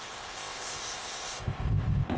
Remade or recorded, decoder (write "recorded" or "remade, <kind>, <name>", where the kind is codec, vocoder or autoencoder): remade, codec, ZipCodec